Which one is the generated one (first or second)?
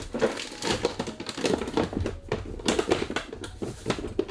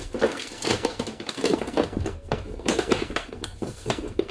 second